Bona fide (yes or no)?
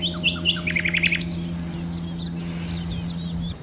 yes